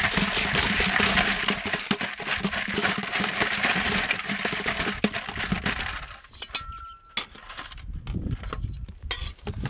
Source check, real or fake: real